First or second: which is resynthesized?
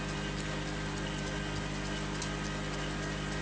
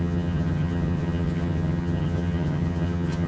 second